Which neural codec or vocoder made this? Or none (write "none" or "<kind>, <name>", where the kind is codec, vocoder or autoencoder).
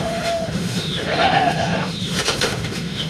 autoencoder, DAC-VAE